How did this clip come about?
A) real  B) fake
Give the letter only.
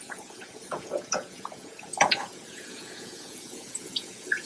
B